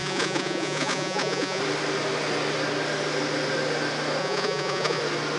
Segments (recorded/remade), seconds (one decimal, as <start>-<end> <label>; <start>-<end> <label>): 0.0-1.6 remade; 1.6-4.2 recorded; 4.2-5.0 remade; 5.0-5.4 recorded